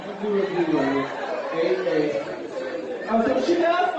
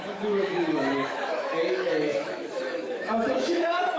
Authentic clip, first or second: first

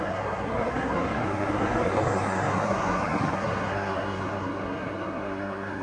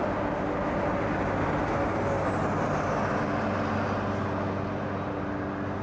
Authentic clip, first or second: second